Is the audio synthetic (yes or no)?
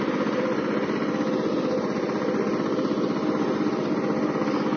no